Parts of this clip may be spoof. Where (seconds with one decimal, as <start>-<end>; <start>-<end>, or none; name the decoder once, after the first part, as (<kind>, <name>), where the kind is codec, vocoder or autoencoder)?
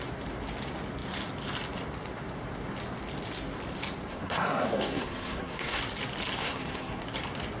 4.1-5.8 (codec, SNAC); 6.4-7.0